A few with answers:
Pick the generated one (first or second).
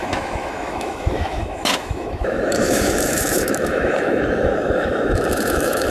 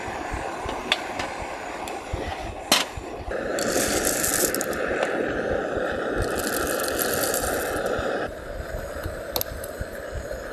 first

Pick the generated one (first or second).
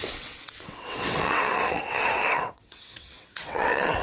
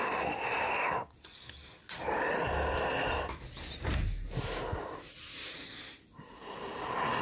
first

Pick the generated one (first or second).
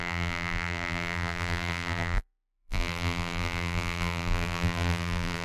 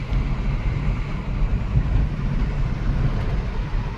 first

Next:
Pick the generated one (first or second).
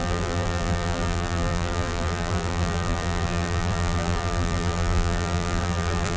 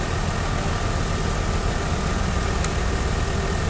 first